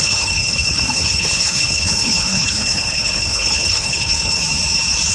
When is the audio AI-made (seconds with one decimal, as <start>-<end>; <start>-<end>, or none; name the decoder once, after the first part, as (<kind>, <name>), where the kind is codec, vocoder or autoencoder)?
0.0-4.4 (codec, HILCodec)